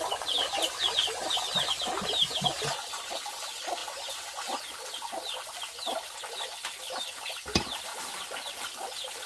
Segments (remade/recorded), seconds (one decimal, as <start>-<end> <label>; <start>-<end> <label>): 0.0-9.3 recorded